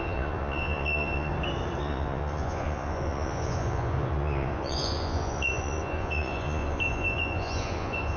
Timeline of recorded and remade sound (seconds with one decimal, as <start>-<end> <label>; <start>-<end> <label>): 0.0-1.3 remade; 1.3-1.8 recorded; 1.8-8.2 remade